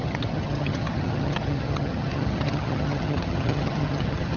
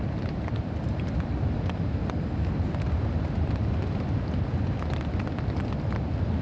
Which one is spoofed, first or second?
first